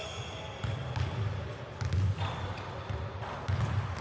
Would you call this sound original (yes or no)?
yes